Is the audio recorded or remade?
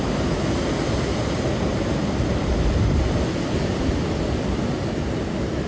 recorded